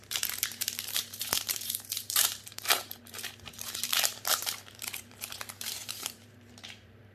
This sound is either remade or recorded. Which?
remade